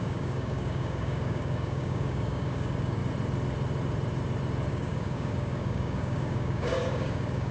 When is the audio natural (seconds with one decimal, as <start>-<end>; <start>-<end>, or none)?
3.0-4.7